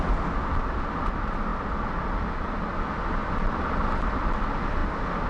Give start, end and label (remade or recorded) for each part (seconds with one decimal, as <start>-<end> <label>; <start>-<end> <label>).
0.0-5.3 recorded